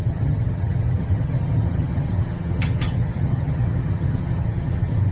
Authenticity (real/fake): fake